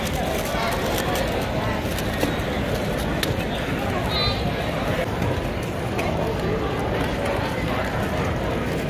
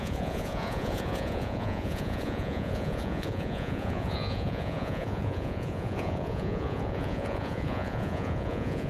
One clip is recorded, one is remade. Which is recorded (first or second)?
first